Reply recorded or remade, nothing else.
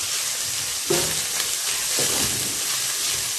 recorded